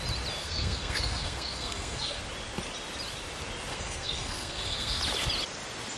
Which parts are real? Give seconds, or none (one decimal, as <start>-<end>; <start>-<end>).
0.0-0.4; 2.2-3.7; 5.0-6.0